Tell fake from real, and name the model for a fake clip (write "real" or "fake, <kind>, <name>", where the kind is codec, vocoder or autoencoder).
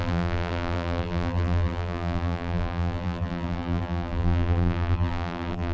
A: fake, vocoder, BigVGAN v2